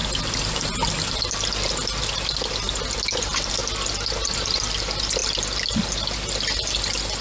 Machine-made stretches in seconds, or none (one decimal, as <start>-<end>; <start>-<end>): 3.2-3.6; 4.2-5.2